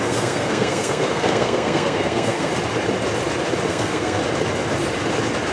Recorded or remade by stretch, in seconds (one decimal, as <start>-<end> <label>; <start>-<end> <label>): 0.0-2.5 remade; 2.5-3.7 recorded; 3.7-4.2 remade; 4.2-5.5 recorded